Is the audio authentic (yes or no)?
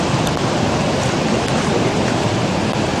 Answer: yes